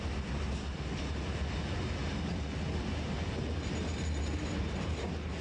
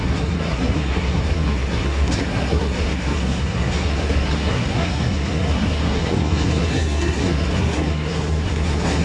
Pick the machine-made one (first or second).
second